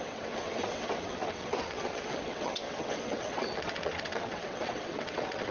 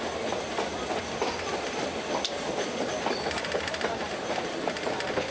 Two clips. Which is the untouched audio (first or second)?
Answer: second